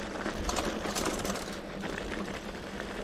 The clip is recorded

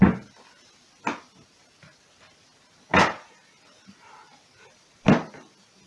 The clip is recorded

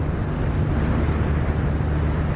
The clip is recorded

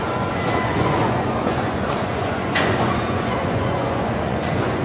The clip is remade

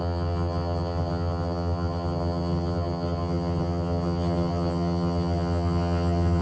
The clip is remade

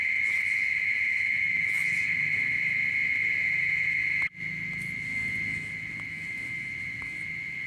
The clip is recorded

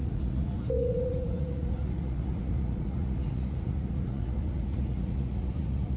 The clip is remade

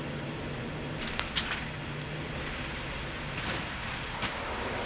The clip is recorded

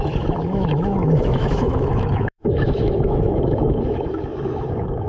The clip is remade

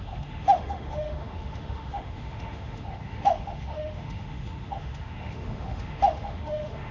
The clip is remade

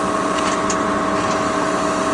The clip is recorded